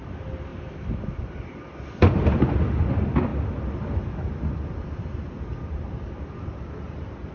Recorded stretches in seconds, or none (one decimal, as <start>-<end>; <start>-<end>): 0.0-7.3